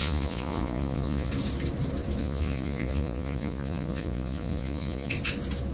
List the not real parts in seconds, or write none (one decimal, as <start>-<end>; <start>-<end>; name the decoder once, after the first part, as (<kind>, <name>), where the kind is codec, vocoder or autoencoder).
0.0-1.3 (vocoder, Vocos); 2.2-5.1